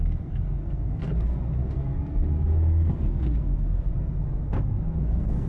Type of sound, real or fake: fake